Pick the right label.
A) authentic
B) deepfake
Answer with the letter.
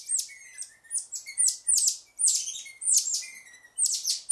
A